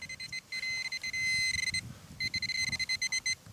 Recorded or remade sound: recorded